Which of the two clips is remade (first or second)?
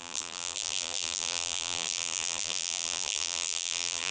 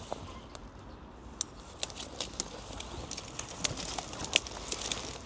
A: first